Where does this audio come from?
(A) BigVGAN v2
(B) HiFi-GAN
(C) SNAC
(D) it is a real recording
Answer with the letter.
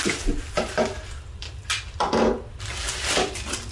D